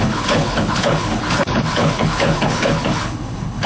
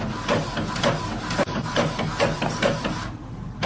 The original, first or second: second